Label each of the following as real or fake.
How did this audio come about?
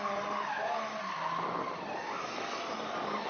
real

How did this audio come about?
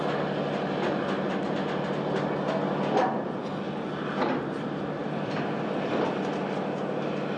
real